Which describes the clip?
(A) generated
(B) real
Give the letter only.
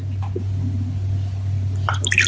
B